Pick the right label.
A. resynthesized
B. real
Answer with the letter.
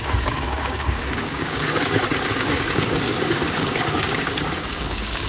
A